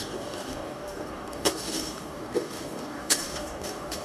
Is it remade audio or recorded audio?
remade